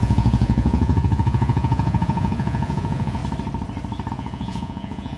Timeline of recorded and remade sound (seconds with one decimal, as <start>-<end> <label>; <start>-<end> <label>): 0.0-3.2 remade; 3.2-4.1 recorded; 4.1-5.2 remade